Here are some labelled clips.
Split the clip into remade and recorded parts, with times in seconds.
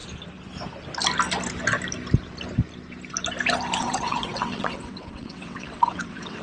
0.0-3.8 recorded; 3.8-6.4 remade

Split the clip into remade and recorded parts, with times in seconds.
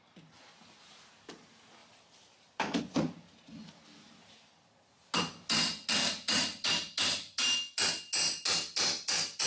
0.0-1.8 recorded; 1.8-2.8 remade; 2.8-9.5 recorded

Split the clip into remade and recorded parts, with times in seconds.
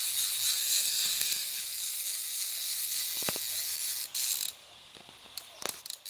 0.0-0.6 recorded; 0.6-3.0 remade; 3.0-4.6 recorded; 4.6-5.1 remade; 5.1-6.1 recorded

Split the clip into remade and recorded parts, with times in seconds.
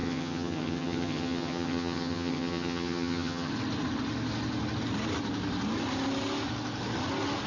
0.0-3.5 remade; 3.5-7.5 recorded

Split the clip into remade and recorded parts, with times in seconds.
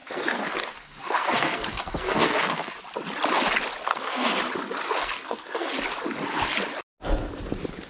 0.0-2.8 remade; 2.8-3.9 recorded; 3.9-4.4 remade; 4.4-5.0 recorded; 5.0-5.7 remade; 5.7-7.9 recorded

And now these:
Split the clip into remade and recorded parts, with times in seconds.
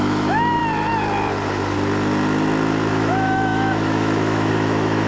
0.0-0.6 remade; 0.6-2.9 recorded; 2.9-5.1 remade